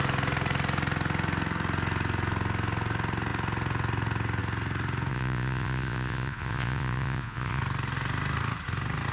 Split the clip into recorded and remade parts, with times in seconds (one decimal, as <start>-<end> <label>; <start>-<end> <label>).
0.0-5.1 recorded; 5.1-7.6 remade; 7.6-9.1 recorded